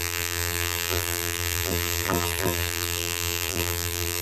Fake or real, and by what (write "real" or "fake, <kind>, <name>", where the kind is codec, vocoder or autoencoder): fake, vocoder, BigVGAN v2